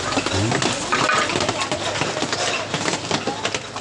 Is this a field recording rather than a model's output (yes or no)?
yes